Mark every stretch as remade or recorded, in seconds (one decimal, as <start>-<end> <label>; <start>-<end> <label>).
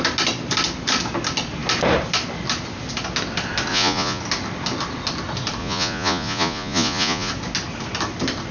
0.0-3.7 recorded; 3.7-4.2 remade; 4.2-5.6 recorded; 5.6-7.3 remade; 7.3-8.5 recorded